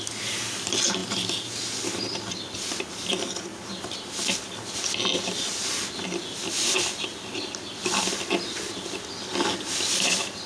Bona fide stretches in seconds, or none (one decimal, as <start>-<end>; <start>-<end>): 0.0-10.5